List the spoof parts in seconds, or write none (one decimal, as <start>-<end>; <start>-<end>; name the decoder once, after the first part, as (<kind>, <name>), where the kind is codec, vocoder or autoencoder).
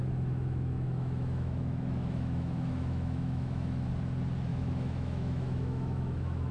0.0-3.9 (autoencoder, DAC-VAE); 4.5-6.5